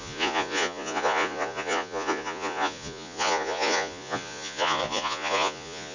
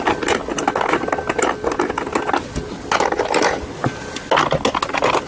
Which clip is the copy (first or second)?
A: first